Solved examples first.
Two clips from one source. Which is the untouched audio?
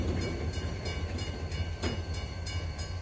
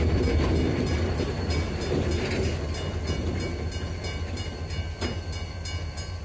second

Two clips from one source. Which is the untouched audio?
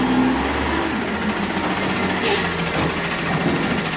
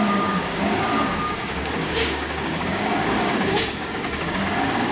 first